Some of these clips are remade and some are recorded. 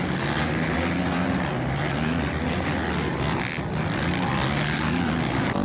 recorded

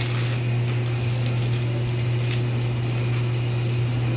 recorded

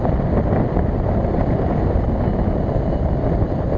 remade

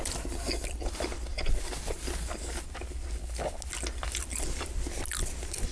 recorded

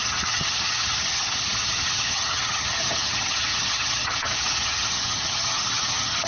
remade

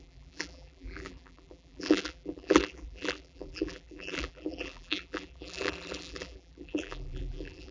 remade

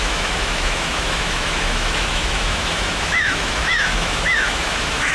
remade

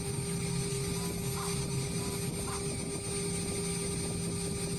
recorded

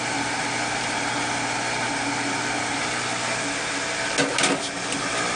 recorded